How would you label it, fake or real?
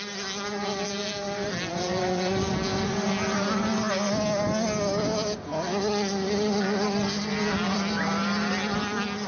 real